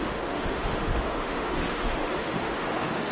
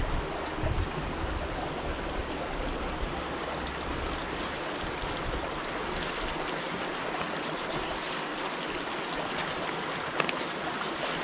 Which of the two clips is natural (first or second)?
second